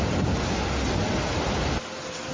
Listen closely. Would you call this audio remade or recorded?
recorded